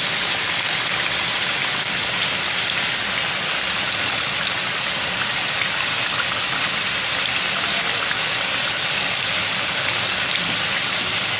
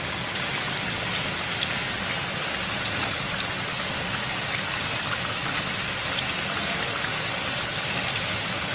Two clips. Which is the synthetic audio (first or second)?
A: first